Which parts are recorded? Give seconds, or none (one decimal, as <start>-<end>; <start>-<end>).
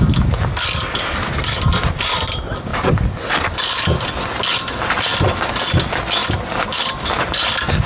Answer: 0.0-7.9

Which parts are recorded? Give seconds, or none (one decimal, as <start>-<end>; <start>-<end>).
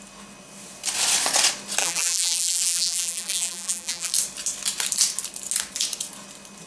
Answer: 0.0-1.8; 4.1-6.7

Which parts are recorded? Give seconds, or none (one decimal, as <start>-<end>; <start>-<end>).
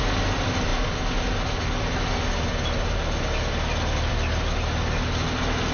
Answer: 0.0-5.7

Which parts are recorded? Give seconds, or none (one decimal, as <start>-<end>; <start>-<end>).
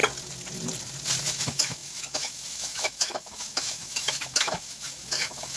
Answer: 0.0-1.2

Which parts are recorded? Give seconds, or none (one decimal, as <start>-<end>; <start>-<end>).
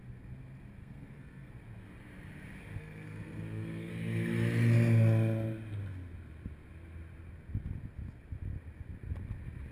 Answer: 0.0-0.8; 1.5-2.8; 3.9-9.7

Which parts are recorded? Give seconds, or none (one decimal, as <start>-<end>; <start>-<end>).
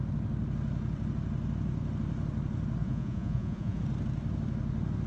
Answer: 0.0-2.8; 3.8-5.1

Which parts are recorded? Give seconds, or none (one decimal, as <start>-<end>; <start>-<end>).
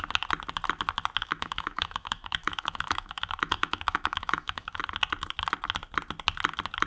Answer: 0.0-1.2; 4.8-6.9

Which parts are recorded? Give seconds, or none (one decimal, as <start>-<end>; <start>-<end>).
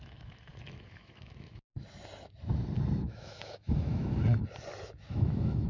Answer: 1.7-3.0; 4.2-5.1